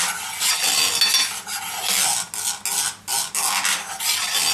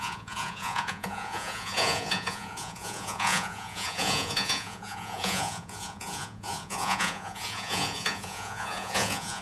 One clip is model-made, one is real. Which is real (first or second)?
first